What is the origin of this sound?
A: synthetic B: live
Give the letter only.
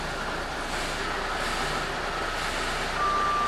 B